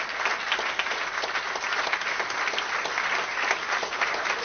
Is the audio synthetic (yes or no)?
no